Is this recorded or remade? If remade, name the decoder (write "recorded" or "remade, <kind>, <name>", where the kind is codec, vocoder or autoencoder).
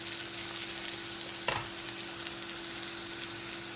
recorded